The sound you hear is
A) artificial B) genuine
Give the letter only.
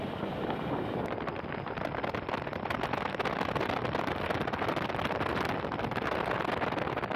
B